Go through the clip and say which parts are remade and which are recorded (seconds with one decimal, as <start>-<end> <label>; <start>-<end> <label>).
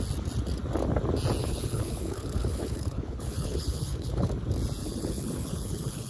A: 0.0-1.4 recorded; 1.4-4.3 remade; 4.3-4.8 recorded; 4.8-6.1 remade